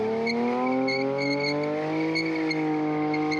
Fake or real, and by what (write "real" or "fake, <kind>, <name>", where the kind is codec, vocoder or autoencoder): real